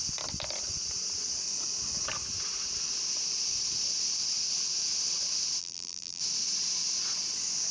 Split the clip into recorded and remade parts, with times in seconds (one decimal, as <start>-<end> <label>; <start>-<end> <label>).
0.0-5.6 recorded; 5.6-6.2 remade; 6.2-7.7 recorded